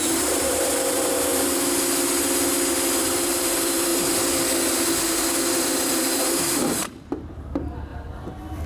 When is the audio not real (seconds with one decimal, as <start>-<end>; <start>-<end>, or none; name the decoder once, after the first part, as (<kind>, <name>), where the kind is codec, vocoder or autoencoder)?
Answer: 0.0-1.3 (vocoder, BigVGAN v2); 3.0-3.9; 5.0-7.9